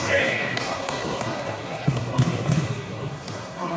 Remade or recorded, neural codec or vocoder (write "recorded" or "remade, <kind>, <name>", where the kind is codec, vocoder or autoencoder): remade, codec, SNAC